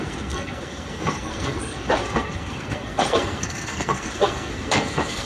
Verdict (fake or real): fake